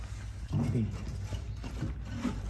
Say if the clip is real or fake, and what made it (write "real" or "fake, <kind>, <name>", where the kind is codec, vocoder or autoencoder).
real